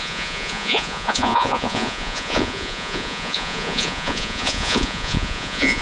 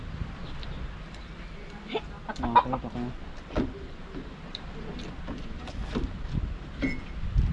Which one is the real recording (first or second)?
second